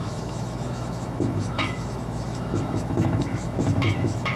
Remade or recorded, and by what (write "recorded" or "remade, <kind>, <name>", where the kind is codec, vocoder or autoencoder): remade, autoencoder, DAC-VAE